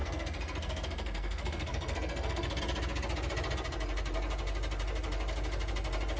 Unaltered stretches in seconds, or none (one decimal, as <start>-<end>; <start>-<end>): 2.6-6.2